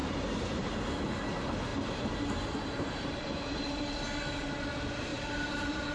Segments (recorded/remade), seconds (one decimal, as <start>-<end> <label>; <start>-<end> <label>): 0.0-0.7 remade; 0.7-1.7 recorded; 1.7-3.8 remade; 3.8-5.1 recorded; 5.1-5.9 remade